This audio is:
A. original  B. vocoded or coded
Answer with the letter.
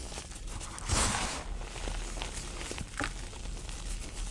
A